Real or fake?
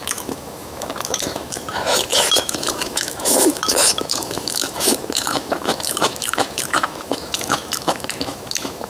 fake